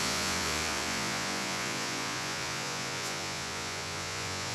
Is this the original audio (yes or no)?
no